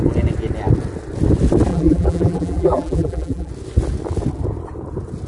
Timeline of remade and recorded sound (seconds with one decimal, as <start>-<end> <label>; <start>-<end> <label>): 0.0-1.7 recorded; 1.7-3.5 remade; 3.5-5.3 recorded